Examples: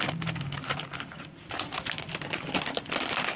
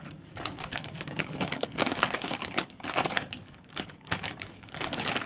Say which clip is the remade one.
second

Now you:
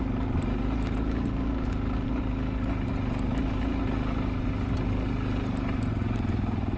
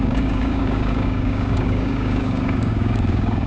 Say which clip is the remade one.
second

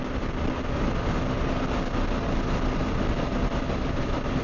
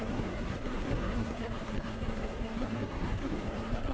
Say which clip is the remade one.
second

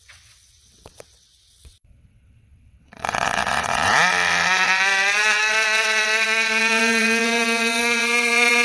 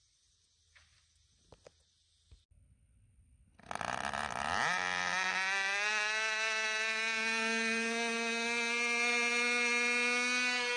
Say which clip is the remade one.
first